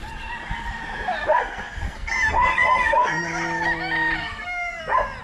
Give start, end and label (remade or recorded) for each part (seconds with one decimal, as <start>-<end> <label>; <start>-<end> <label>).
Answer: 0.0-1.3 recorded; 1.3-3.1 remade; 3.1-4.2 recorded; 4.2-4.8 remade; 4.8-5.2 recorded